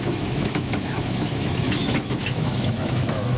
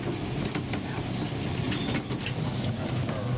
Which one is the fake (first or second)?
first